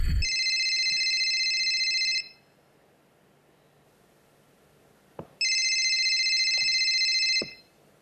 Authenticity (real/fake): real